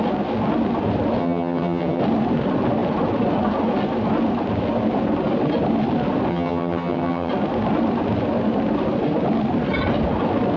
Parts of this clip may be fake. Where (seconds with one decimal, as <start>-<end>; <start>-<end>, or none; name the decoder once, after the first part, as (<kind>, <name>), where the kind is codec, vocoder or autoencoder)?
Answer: 1.2-2.0 (vocoder, HiFi-GAN); 6.3-7.3